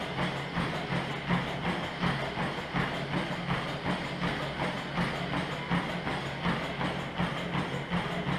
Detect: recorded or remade recorded